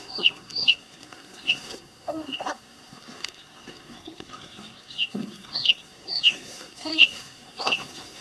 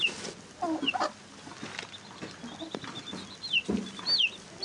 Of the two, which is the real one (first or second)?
second